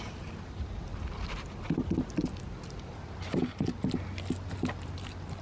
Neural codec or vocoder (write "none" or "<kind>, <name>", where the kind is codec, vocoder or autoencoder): vocoder, BigVGAN v2